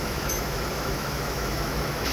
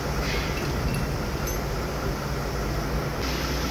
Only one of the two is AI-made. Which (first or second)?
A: first